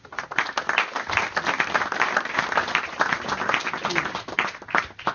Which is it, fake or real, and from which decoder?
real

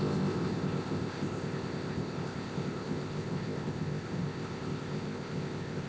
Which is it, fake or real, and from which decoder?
fake, codec, ZipCodec